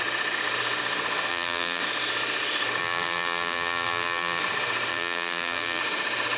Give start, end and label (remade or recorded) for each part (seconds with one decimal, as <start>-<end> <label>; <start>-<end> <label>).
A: 0.0-1.3 recorded; 1.3-1.8 remade; 1.8-2.8 recorded; 2.8-4.4 remade; 4.4-4.9 recorded; 4.9-5.8 remade; 5.8-6.4 recorded